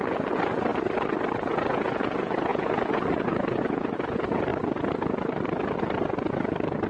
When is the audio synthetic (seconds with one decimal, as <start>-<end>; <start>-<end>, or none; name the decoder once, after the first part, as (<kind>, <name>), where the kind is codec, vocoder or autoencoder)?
0.0-0.7 (vocoder, Vocos); 1.3-4.5